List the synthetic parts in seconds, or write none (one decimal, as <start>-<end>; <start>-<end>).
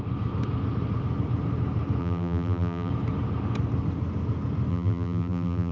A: 2.0-2.9; 4.7-5.7